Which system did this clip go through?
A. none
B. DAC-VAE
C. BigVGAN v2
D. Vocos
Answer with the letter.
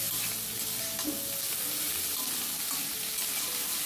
A